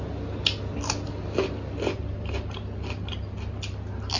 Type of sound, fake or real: real